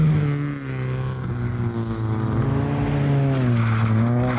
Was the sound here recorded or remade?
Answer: recorded